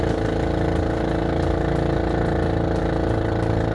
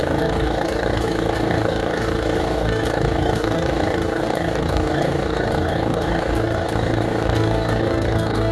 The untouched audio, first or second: first